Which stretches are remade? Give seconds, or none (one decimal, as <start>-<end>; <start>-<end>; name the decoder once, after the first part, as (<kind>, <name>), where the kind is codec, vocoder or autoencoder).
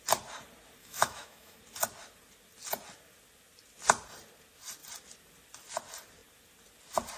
0.8-1.6 (autoencoder, DAC-VAE)